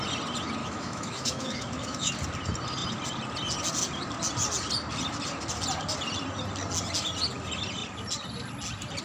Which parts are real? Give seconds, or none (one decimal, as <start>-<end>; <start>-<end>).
0.0-0.6; 2.1-9.0